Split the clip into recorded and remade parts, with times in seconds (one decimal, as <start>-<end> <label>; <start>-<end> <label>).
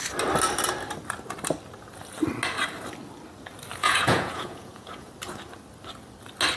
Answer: 0.0-3.8 recorded; 3.8-5.1 remade; 5.1-6.6 recorded